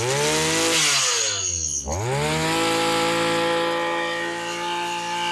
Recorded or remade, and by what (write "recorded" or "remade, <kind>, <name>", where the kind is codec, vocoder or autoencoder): recorded